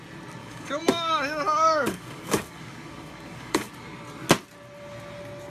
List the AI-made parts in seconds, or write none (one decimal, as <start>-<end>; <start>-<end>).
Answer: 0.4-3.7